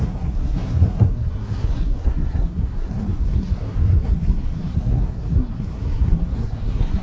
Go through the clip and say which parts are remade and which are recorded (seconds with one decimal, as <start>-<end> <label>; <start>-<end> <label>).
0.0-7.0 remade